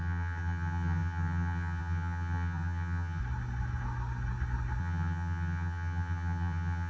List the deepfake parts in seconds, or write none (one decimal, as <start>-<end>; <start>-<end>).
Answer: 0.0-3.2; 4.8-6.9